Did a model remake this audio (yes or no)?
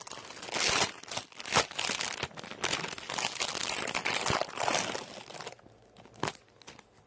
no